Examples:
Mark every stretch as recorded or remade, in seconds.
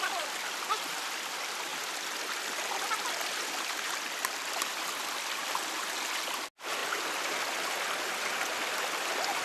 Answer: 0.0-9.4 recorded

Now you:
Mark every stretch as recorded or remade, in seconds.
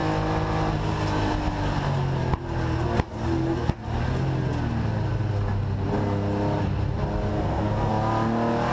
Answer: 0.0-7.3 recorded; 7.3-7.9 remade; 7.9-8.7 recorded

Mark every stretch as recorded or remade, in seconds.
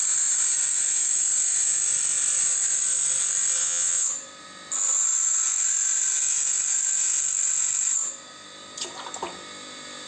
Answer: 0.0-3.6 recorded; 3.6-4.1 remade; 4.1-10.1 recorded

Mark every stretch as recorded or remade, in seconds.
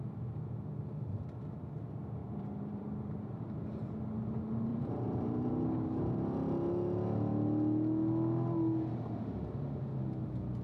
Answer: 0.0-2.2 recorded; 2.2-3.6 remade; 3.6-4.7 recorded; 4.7-5.5 remade; 5.5-10.6 recorded